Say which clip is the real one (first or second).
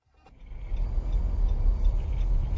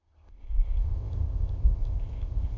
first